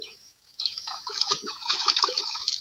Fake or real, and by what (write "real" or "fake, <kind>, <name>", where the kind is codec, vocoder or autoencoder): fake, autoencoder, DAC-VAE